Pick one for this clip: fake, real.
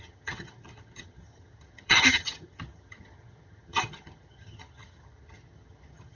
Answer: fake